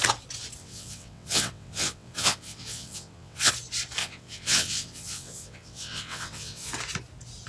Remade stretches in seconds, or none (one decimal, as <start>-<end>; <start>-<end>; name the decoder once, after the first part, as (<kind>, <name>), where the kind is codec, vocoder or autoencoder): 0.6-3.5 (vocoder, WaveNeXt); 4.0-6.7